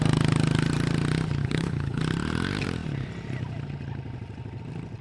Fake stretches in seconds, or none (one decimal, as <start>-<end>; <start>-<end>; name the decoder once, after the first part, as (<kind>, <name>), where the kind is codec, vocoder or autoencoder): 1.4-2.0 (codec, HILCodec)